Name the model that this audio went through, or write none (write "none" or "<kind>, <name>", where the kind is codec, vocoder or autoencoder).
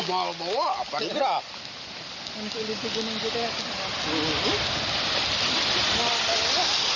none